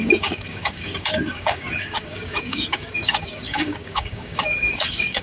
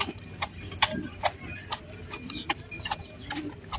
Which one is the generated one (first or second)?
first